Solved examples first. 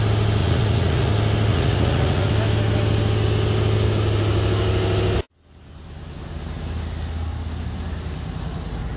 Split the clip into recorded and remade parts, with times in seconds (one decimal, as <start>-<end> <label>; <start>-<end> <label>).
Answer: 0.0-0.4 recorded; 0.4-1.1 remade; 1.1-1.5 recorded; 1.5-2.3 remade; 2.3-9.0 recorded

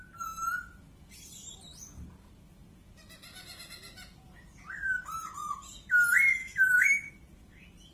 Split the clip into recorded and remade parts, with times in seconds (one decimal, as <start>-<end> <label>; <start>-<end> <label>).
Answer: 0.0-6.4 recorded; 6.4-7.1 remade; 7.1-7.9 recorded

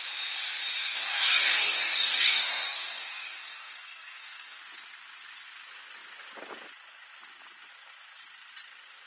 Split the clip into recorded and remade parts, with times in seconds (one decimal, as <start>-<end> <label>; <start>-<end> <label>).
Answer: 0.0-0.8 recorded; 0.8-4.6 remade; 4.6-9.1 recorded

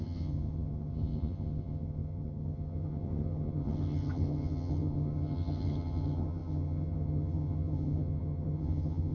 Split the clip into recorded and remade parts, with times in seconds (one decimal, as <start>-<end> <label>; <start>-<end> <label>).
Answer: 0.0-9.1 remade

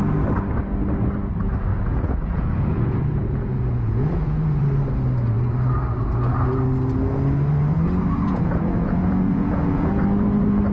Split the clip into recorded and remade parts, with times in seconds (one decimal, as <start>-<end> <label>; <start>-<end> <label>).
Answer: 0.0-1.7 recorded; 1.7-4.6 remade; 4.6-8.3 recorded; 8.3-9.9 remade; 9.9-10.7 recorded